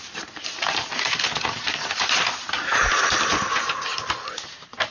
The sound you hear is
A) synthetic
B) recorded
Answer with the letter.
B